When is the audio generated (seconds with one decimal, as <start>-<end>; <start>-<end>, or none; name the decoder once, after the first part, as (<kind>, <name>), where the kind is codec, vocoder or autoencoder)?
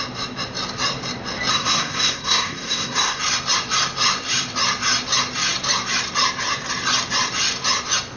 1.5-3.2 (codec, SNAC)